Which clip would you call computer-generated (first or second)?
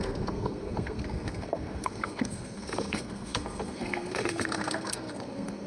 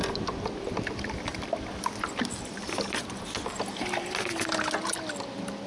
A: first